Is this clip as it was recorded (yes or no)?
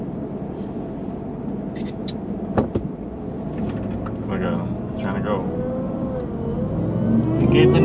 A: yes